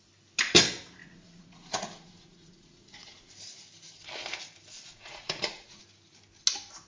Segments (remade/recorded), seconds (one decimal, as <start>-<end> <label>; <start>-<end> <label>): 0.0-1.0 recorded; 1.0-3.3 remade; 3.3-4.9 recorded; 4.9-5.8 remade; 5.8-6.9 recorded